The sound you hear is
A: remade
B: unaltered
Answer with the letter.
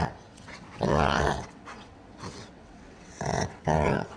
A